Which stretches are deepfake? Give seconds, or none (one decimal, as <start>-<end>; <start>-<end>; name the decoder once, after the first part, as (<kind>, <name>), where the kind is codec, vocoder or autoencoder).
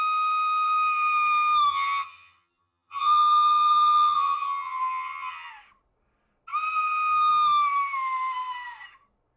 1.7-5.5 (vocoder, HiFi-GAN)